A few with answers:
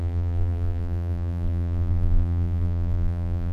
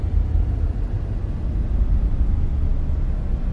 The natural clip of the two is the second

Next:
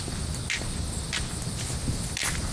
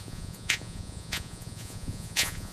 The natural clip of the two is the first